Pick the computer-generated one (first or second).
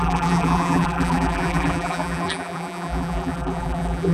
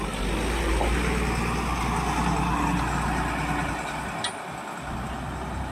first